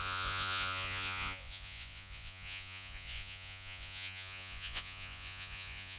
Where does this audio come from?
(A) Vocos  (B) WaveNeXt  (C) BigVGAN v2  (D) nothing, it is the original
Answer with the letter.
A